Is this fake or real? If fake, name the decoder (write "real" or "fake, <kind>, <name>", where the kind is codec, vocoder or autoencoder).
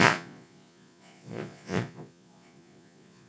fake, vocoder, Vocos